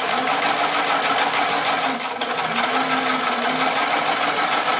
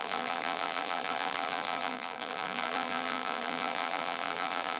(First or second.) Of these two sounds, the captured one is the first